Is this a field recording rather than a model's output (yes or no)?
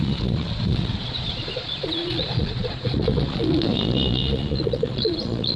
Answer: no